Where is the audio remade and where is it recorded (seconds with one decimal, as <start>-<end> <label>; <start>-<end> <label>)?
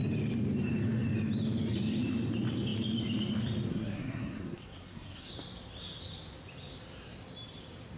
0.0-3.7 recorded; 3.7-5.3 remade; 5.3-8.0 recorded